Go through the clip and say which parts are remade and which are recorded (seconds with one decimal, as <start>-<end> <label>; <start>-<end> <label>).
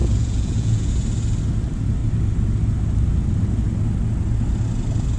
0.0-0.9 remade; 0.9-5.2 recorded